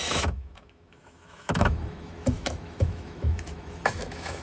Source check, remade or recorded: remade